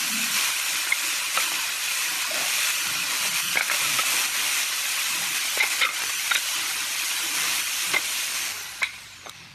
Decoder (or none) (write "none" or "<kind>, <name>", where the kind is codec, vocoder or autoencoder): none